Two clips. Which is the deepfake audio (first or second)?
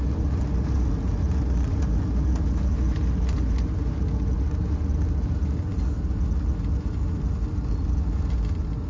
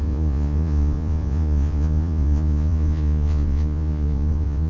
second